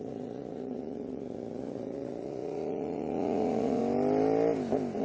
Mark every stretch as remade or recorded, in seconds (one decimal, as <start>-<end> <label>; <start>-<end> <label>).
0.0-3.8 remade; 3.8-5.0 recorded